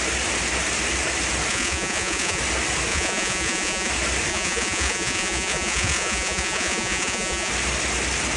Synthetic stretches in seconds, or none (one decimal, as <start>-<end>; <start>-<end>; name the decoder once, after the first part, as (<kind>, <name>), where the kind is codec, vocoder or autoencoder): 1.5-2.4 (vocoder, Vocos); 2.9-3.9; 4.3-7.5